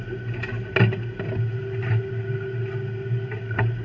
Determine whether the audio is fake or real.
real